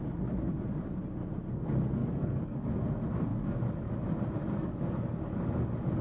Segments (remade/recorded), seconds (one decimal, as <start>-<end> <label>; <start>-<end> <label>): 0.0-2.0 recorded; 2.0-2.7 remade; 2.7-3.3 recorded; 3.3-3.9 remade; 3.9-4.6 recorded; 4.6-5.4 remade; 5.4-6.0 recorded